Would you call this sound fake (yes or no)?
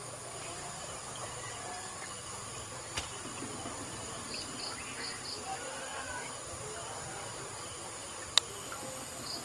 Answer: no